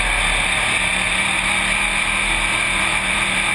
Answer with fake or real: real